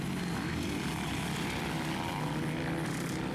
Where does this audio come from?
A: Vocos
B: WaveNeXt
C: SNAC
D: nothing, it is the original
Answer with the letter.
D